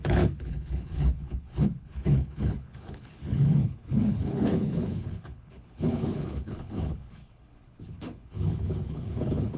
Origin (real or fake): fake